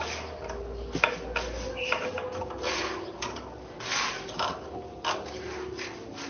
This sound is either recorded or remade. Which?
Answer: recorded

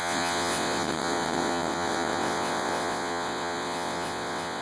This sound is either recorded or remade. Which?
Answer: remade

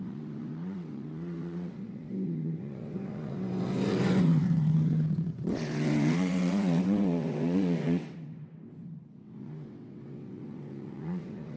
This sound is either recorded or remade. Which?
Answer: remade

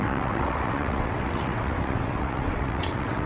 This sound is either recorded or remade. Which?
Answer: remade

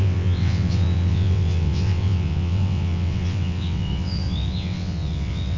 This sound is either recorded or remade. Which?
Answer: remade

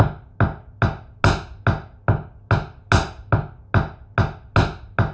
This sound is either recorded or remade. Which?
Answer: recorded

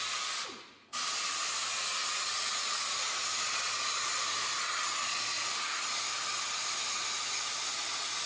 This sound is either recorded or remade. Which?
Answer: recorded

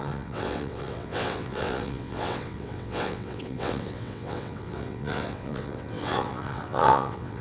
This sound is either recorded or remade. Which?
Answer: remade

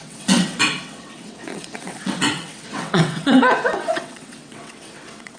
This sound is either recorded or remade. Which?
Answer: remade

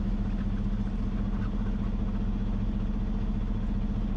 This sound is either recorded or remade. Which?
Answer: recorded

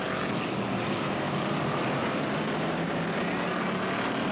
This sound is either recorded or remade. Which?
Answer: recorded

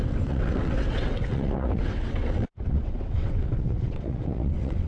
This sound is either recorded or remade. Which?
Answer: remade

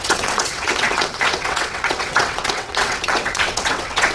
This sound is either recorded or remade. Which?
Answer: remade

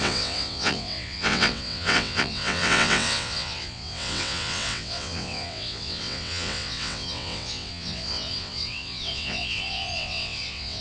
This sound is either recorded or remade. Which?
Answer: remade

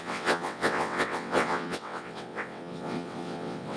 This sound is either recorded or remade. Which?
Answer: remade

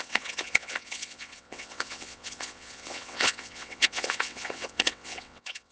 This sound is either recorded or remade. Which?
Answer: remade